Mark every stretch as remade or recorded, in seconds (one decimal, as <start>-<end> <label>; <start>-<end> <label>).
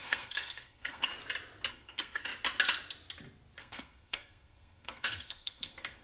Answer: 0.0-1.1 remade; 1.1-1.7 recorded; 1.7-2.3 remade; 2.3-3.6 recorded; 3.6-6.0 remade